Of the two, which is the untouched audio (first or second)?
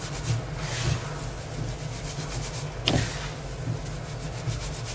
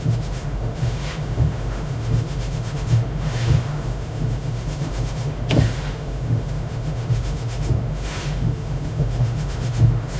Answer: first